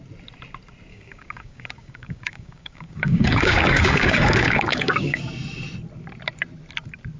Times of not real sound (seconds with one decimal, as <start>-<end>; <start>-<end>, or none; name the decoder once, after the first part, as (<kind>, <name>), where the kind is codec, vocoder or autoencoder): 0.9-5.2 (codec, DAC)